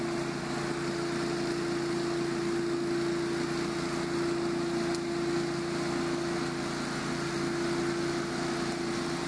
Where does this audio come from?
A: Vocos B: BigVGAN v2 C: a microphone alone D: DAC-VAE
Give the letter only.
C